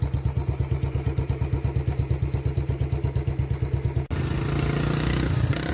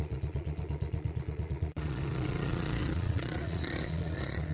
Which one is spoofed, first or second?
second